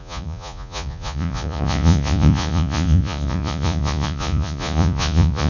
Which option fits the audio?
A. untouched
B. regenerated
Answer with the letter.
B